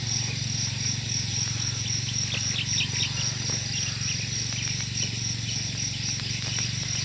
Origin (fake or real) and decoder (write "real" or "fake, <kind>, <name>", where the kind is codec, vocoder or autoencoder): real